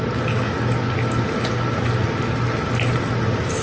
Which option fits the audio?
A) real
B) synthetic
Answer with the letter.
A